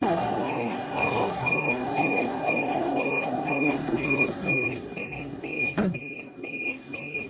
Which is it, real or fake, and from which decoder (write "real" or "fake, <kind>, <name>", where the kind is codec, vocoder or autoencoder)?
fake, codec, SNAC